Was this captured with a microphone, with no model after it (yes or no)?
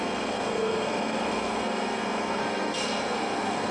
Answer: no